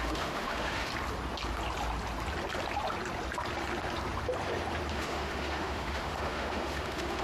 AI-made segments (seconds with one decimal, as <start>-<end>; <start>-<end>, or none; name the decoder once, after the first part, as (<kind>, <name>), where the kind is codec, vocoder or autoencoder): 0.0-0.9 (autoencoder, DAC-VAE); 4.9-7.2